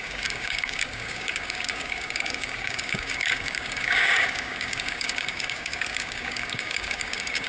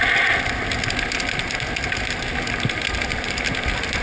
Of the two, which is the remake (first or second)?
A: first